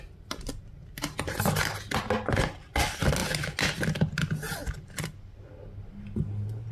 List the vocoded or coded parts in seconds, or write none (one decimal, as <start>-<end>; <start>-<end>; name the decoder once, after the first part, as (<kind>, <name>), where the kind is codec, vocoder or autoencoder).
none